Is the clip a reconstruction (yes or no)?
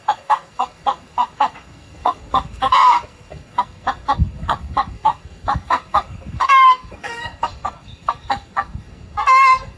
yes